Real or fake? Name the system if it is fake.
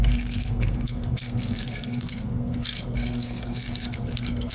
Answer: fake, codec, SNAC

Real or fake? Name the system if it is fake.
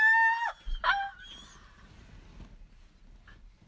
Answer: real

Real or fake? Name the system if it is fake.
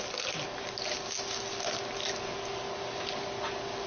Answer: real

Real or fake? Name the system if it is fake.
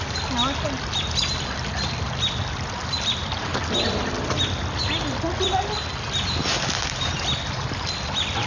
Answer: real